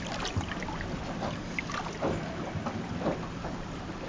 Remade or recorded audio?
recorded